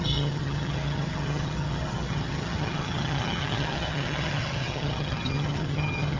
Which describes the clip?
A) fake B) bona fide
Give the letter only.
A